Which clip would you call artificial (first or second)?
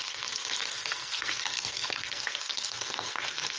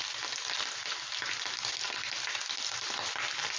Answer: first